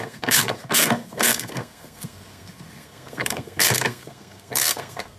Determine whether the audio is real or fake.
fake